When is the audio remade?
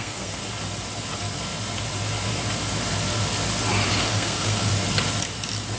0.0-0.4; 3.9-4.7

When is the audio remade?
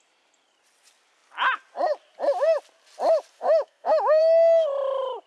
3.3-4.2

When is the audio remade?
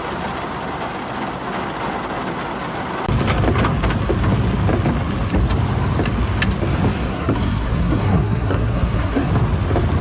7.1-9.3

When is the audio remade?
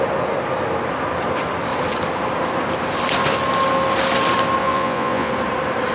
4.6-5.3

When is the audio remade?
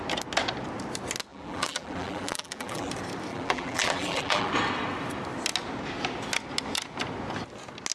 1.3-2.9; 3.3-4.5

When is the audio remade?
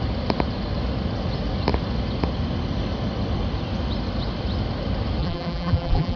5.2-6.2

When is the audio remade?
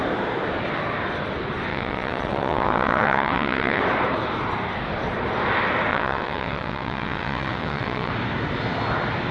1.7-3.8; 5.9-8.1